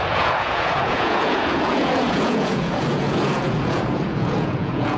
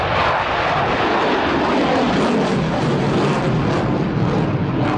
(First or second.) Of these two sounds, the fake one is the first